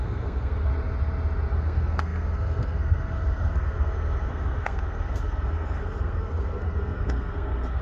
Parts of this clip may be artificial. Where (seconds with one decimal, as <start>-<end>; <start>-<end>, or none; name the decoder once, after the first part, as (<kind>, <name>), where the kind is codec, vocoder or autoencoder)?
0.0-0.7 (codec, SNAC); 1.5-7.8